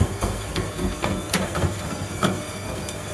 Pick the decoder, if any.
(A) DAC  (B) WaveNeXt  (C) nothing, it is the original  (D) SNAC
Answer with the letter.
D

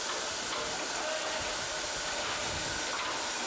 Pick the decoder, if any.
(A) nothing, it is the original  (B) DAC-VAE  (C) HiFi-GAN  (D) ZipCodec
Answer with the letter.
A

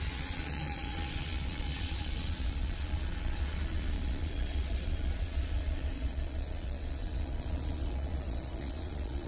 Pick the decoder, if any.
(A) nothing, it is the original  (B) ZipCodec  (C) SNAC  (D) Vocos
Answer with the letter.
D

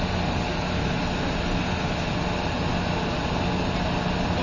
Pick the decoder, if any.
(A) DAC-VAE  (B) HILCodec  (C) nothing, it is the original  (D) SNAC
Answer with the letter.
C